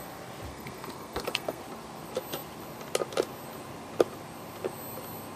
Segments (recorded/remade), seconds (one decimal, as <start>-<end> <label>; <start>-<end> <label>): 0.0-0.5 recorded; 0.5-1.6 remade; 1.6-5.4 recorded